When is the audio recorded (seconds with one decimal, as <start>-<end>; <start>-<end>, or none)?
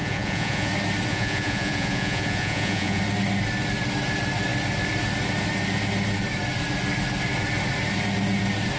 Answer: 0.7-1.1; 3.0-8.8